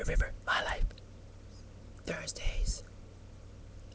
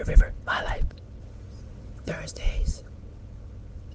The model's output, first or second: second